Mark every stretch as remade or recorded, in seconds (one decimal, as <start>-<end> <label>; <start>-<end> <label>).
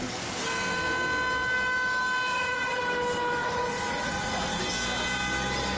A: 0.0-2.3 recorded; 2.3-2.8 remade; 2.8-3.4 recorded; 3.4-4.6 remade; 4.6-5.8 recorded